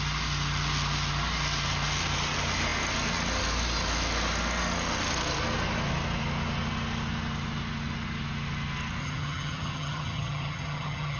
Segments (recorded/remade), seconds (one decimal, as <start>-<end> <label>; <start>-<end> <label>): 0.0-9.0 recorded; 9.0-11.2 remade